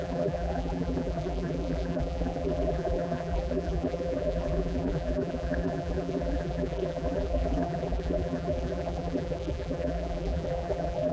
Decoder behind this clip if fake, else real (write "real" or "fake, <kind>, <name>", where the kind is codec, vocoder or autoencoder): fake, vocoder, BigVGAN v2